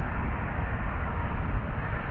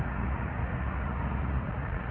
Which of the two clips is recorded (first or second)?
first